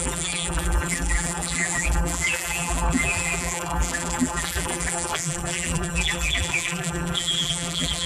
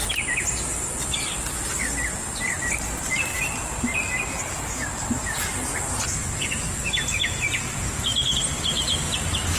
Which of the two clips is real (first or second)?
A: second